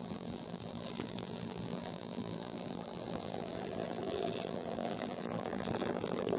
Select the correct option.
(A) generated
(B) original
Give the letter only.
A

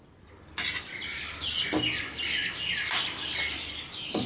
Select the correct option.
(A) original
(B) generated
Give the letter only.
A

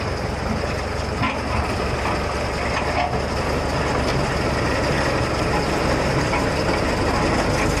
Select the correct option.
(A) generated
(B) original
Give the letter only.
B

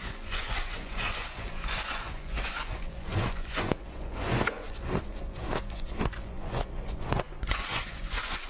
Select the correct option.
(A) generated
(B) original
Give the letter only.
A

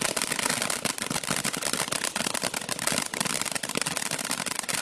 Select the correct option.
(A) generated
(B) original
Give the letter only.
B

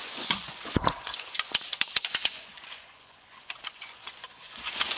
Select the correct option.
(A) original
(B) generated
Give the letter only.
B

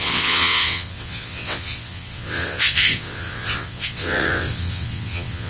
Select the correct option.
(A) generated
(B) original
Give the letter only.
A